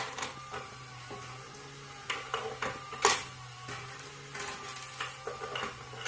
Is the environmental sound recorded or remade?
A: recorded